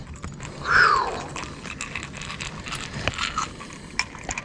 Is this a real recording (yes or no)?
yes